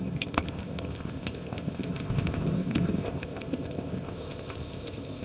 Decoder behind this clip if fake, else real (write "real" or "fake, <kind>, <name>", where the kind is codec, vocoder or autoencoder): fake, codec, ZipCodec